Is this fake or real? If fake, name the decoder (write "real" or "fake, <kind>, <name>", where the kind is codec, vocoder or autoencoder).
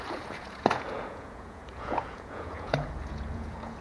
fake, vocoder, Vocos